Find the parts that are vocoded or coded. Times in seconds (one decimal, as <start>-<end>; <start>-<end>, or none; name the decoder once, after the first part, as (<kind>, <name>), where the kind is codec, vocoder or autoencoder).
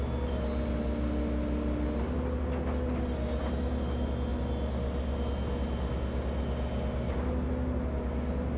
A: none